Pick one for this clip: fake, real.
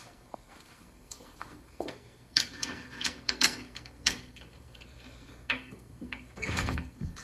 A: fake